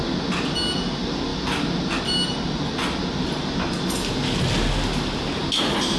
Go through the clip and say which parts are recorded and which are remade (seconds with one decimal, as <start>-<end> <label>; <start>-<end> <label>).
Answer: 0.0-6.0 recorded